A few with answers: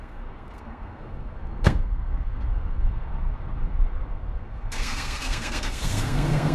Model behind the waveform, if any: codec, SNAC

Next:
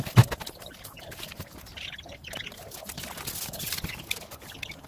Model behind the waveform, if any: none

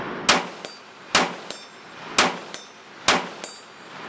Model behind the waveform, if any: none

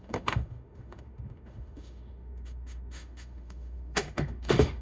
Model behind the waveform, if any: autoencoder, DAC-VAE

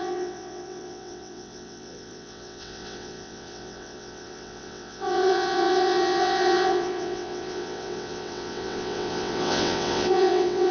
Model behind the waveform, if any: vocoder, WaveNeXt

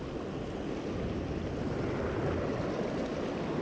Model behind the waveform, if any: none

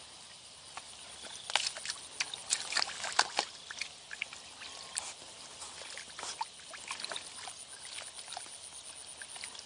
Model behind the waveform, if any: none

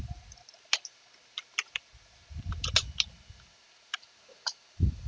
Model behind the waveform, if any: none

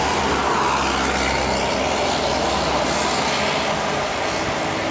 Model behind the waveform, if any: none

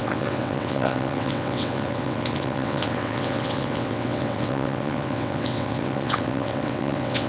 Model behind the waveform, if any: vocoder, WaveNeXt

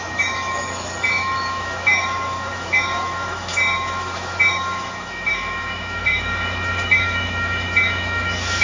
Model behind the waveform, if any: autoencoder, DAC-VAE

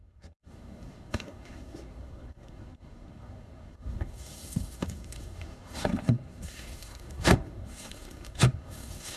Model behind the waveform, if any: codec, SNAC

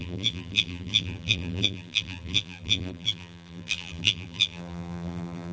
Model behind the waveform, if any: vocoder, BigVGAN v2